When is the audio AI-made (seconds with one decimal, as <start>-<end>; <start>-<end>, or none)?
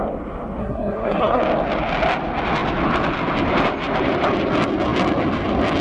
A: 0.6-1.4